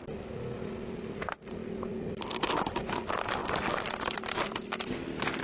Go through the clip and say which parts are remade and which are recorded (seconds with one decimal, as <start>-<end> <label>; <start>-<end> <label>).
0.0-5.4 recorded